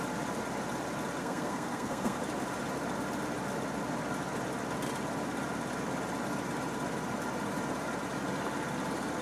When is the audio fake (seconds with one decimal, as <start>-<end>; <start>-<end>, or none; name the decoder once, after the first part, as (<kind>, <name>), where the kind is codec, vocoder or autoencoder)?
1.2-2.2 (codec, SNAC)